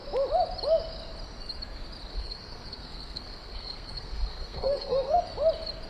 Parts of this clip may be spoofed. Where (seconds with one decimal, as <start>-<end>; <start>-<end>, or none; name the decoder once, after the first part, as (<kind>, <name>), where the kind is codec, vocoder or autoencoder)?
2.1-5.2 (codec, SNAC)